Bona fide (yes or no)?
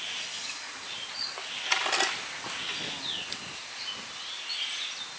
yes